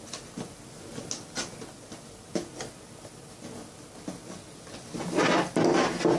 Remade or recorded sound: recorded